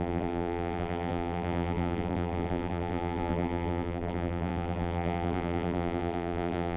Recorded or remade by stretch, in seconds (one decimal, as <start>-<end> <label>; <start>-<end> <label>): 0.0-6.8 remade